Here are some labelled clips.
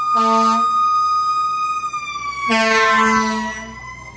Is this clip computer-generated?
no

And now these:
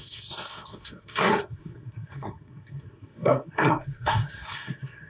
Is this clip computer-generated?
yes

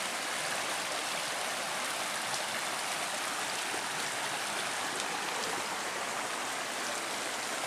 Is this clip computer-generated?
no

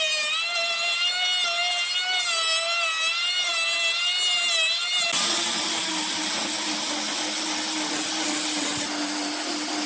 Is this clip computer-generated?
no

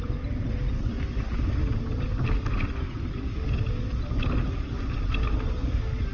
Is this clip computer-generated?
no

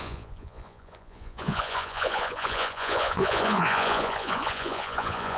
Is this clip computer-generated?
yes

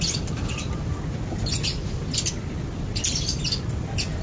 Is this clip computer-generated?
no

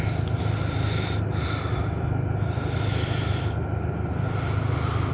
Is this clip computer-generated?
no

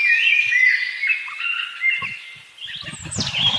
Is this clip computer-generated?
no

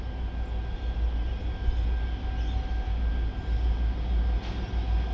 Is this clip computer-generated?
no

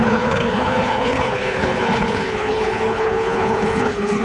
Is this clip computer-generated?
yes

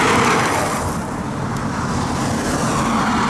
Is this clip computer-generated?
no